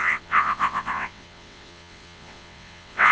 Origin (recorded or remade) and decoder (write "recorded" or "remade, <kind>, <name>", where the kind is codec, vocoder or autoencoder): remade, vocoder, WaveNeXt